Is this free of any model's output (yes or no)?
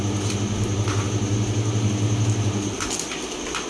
yes